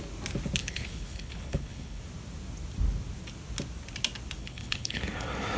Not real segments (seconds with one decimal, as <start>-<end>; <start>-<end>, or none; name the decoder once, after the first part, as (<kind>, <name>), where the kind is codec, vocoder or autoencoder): 0.6-2.0 (codec, HILCodec); 4.4-5.0